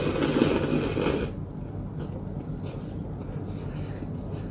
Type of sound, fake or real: real